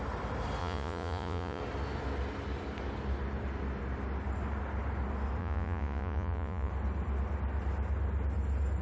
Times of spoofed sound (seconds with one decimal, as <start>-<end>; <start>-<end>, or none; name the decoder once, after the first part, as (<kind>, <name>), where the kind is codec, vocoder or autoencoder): 0.6-1.6 (vocoder, Vocos); 5.4-6.7